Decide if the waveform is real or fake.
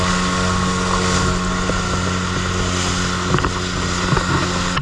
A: real